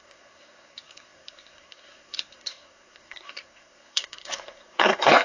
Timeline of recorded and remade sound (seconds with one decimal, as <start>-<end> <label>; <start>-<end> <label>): 0.0-5.2 remade